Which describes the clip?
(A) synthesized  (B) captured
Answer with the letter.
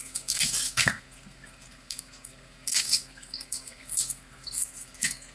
A